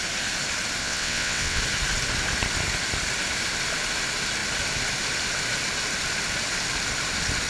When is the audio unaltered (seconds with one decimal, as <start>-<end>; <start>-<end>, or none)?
0.0-0.8; 1.6-7.5